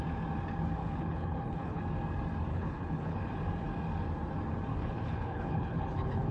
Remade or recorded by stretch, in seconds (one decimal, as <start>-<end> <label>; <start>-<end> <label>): 0.0-0.8 recorded; 0.8-1.8 remade; 1.8-2.5 recorded; 2.5-3.2 remade; 3.2-4.7 recorded; 4.7-6.3 remade